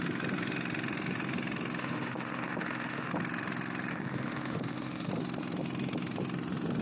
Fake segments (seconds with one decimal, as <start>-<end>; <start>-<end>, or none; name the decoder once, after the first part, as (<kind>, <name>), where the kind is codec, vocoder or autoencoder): 1.8-3.1 (autoencoder, DAC-VAE); 3.9-5.1